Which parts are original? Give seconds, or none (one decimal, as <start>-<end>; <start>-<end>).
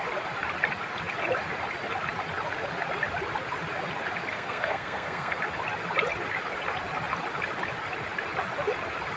0.0-4.3; 5.4-9.2